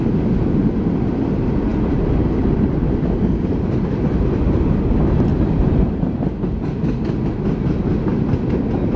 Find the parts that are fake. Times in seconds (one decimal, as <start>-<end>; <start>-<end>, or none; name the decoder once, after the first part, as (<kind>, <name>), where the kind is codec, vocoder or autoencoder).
none